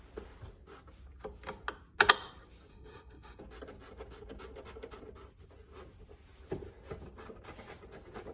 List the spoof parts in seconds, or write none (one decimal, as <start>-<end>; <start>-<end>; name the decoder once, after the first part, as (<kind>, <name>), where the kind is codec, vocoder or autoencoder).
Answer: 2.7-3.4 (codec, SNAC)